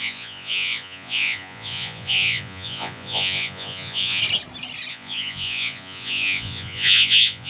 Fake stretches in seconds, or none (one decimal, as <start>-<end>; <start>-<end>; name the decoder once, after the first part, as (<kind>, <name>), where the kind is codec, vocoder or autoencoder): 0.0-4.2 (vocoder, Vocos); 4.9-7.5